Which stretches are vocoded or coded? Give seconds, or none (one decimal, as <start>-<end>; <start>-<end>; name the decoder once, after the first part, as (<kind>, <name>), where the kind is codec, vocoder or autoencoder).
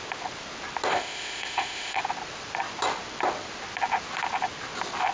0.9-2.0 (codec, ZipCodec)